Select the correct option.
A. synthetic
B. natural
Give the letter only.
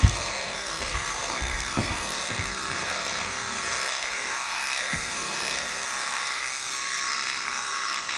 A